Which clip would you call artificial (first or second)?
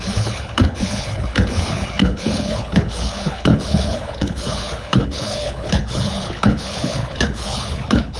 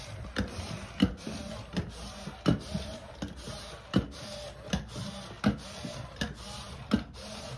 first